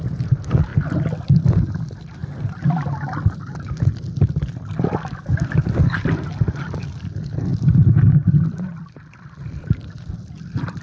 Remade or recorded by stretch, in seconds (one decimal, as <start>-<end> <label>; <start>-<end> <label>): 0.0-0.7 recorded; 0.7-1.4 remade; 1.4-7.5 recorded; 7.5-10.8 remade